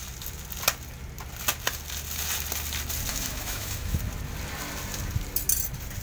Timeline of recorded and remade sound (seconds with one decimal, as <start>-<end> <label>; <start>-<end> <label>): 0.0-3.1 recorded; 3.1-4.0 remade; 4.0-6.0 recorded